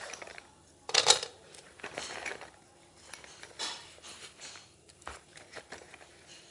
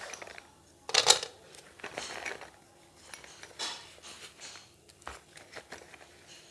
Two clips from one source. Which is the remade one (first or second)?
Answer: first